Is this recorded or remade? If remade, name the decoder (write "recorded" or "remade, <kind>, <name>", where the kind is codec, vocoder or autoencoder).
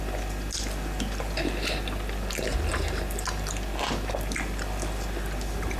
recorded